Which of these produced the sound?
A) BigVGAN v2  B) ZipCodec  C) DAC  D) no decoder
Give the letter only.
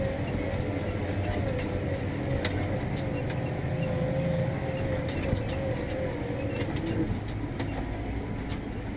D